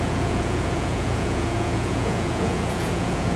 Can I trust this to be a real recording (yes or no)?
no